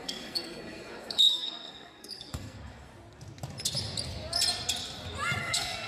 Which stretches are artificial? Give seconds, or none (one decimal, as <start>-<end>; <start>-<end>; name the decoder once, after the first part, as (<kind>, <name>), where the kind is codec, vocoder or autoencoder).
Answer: 0.0-2.9 (codec, SNAC); 5.4-5.9